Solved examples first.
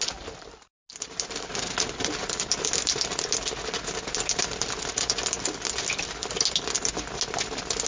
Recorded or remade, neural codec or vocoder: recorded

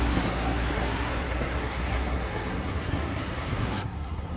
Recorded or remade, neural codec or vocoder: remade, codec, SNAC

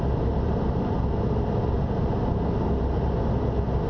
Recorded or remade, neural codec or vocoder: recorded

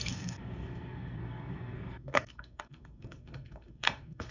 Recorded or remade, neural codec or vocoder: remade, codec, SNAC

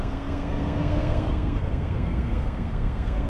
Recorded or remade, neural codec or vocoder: remade, codec, SNAC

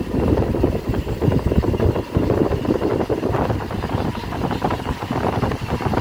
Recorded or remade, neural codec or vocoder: recorded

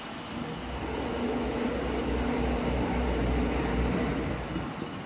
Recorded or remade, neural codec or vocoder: recorded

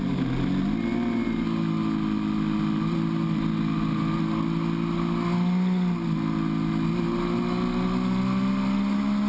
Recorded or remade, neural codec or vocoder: recorded